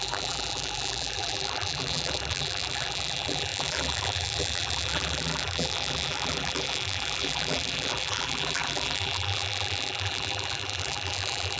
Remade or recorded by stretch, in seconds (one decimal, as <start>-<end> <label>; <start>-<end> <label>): 0.0-11.6 remade